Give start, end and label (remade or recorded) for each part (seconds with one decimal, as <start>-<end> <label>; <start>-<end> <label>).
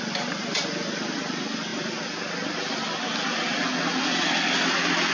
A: 0.0-5.1 recorded